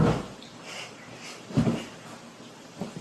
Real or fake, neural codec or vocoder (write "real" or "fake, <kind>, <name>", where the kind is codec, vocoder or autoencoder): real